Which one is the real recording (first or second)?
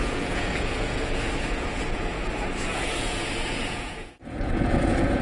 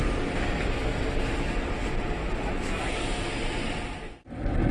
second